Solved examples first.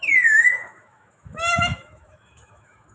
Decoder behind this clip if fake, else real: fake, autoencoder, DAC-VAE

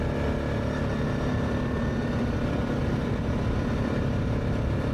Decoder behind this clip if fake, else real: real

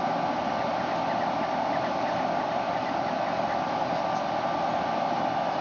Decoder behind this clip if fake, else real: real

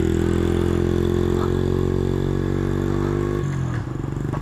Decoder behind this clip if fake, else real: real